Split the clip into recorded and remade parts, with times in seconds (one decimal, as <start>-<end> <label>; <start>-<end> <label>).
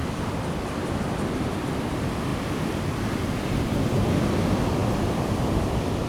0.0-1.6 remade; 1.6-2.3 recorded; 2.3-4.1 remade; 4.1-4.8 recorded; 4.8-6.1 remade